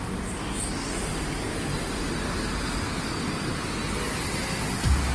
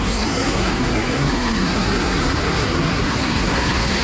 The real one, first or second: first